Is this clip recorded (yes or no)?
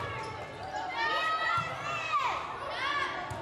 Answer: yes